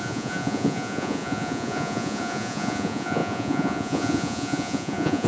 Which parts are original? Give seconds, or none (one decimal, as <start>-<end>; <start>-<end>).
none